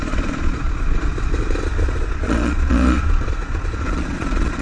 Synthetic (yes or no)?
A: yes